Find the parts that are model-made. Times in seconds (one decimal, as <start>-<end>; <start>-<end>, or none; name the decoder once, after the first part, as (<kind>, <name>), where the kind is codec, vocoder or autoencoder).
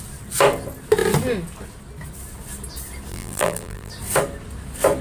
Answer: 3.1-3.9 (vocoder, BigVGAN v2)